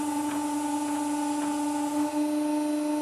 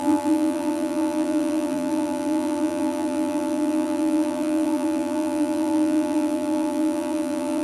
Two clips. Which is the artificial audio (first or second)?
second